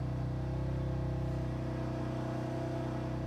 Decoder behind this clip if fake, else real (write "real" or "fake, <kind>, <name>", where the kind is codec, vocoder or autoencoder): real